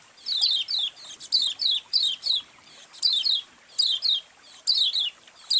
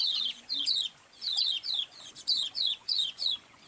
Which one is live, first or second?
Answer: first